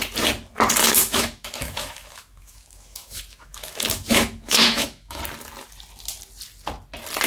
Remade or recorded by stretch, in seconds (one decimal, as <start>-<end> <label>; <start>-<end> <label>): 0.0-0.8 recorded; 0.8-5.2 remade; 5.2-7.3 recorded